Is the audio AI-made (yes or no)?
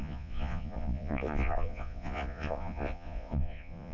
yes